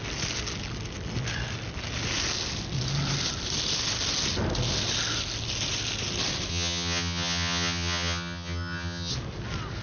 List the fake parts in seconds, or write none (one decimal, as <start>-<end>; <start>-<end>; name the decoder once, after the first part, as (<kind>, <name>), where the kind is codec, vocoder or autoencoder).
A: 6.5-9.1 (vocoder, HiFi-GAN)